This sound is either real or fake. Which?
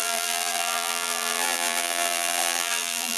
fake